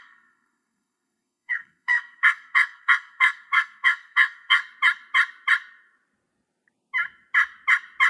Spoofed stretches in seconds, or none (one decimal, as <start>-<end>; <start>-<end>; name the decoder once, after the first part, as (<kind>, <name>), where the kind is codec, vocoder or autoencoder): 0.0-4.6 (codec, SNAC)